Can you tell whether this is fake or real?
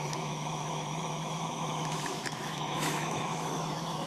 fake